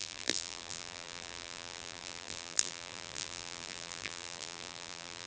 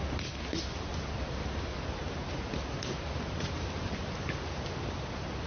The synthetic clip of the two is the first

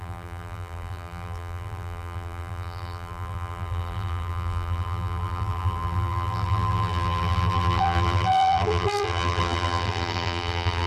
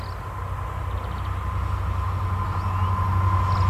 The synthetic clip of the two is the first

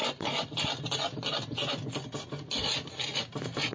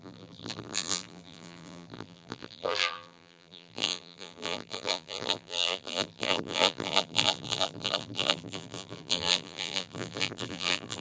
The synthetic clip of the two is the second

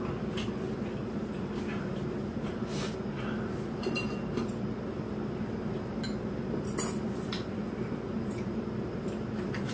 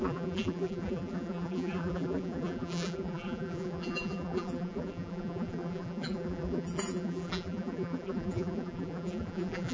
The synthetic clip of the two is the second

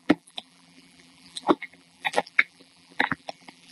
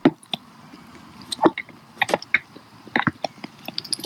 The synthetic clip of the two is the first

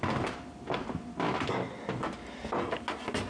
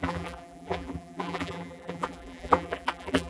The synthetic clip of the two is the second